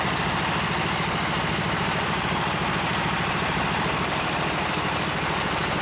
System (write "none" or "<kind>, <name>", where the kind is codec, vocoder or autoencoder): none